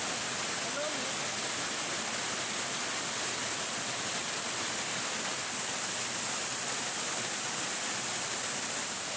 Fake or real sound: real